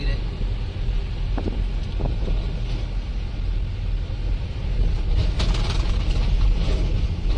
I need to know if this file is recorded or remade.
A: recorded